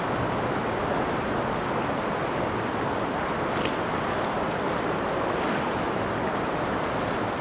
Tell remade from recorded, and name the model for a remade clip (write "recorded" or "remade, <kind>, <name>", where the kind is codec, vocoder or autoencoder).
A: recorded